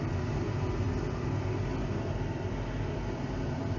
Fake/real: real